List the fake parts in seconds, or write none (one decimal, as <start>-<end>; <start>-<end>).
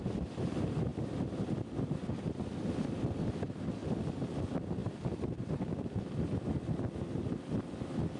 none